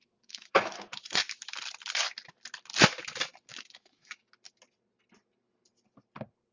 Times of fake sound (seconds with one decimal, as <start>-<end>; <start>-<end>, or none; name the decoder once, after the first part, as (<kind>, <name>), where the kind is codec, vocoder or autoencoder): 0.0-0.8 (autoencoder, DAC-VAE); 3.5-4.3